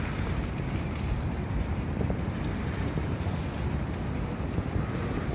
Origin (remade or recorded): remade